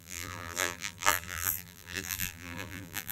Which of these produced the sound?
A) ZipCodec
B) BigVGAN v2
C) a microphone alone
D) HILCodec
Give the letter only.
B